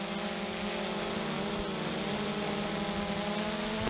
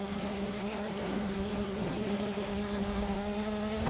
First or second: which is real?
first